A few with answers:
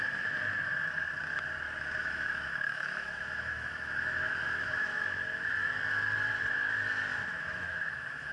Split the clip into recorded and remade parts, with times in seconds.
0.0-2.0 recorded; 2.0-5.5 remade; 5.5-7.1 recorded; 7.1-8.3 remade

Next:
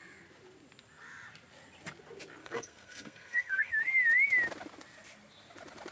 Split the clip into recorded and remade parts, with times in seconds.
0.0-2.4 recorded; 2.4-3.7 remade; 3.7-5.9 recorded